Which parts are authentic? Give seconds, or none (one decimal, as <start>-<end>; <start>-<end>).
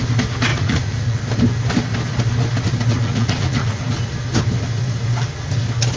0.0-0.5; 1.2-2.9; 3.8-6.0